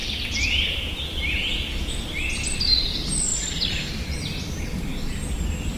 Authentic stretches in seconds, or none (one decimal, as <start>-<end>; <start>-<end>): 0.0-5.8